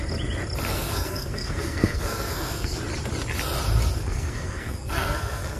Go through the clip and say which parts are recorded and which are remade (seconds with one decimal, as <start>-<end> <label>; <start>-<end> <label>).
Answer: 0.0-0.7 recorded; 0.7-2.8 remade; 2.8-4.0 recorded; 4.0-5.6 remade